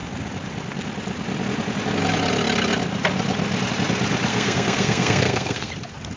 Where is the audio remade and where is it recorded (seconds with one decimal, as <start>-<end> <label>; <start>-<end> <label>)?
0.0-4.3 recorded; 4.3-5.7 remade; 5.7-6.2 recorded